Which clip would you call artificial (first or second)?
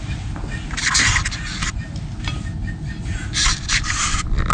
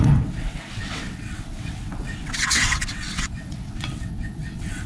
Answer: second